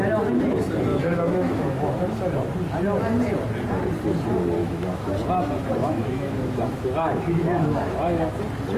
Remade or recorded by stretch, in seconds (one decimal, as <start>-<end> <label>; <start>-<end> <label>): 0.0-0.9 recorded; 0.9-2.0 remade; 2.0-4.6 recorded; 4.6-5.1 remade; 5.1-5.8 recorded; 5.8-8.4 remade; 8.4-8.8 recorded